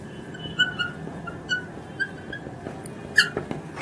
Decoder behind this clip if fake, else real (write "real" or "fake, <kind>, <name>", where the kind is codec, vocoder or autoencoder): real